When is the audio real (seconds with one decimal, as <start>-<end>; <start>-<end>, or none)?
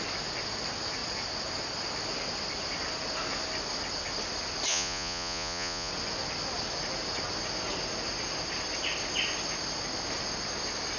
0.0-4.7; 5.9-11.0